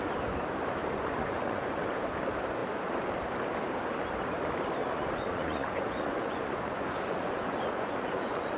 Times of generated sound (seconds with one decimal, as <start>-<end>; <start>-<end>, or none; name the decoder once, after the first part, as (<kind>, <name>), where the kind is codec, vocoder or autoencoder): 0.8-1.8 (vocoder, Vocos); 4.8-8.6